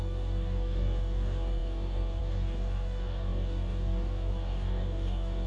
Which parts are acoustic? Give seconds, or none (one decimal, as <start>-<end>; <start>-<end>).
none